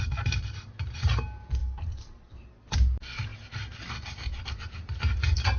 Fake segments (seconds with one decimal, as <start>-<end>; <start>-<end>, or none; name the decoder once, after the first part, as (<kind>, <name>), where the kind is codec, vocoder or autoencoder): 1.6-2.2 (vocoder, BigVGAN v2)